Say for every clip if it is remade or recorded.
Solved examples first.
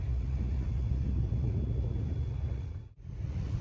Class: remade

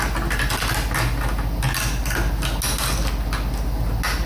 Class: recorded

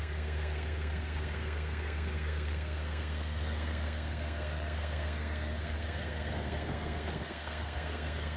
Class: remade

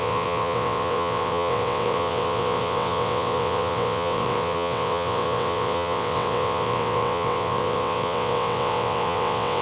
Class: remade